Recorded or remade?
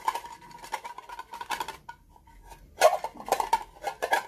recorded